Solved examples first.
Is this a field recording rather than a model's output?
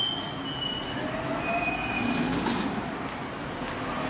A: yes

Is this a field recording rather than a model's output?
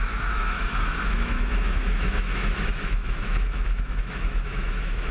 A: no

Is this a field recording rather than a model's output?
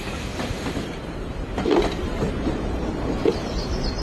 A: no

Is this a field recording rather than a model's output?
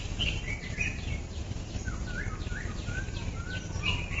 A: yes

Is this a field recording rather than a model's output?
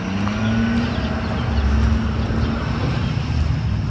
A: yes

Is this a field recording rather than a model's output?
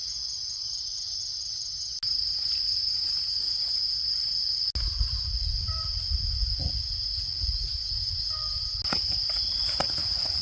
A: yes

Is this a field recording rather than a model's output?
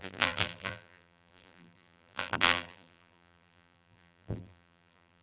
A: no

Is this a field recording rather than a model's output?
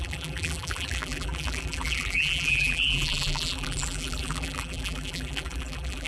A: no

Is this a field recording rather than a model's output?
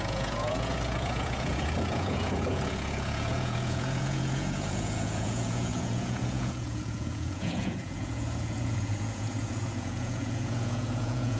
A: no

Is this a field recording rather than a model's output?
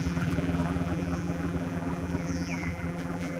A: no